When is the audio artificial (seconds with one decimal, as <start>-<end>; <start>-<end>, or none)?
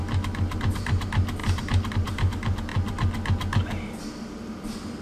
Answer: 0.7-2.7